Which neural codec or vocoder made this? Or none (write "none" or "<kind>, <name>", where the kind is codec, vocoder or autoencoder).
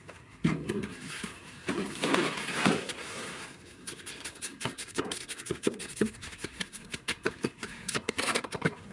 codec, SNAC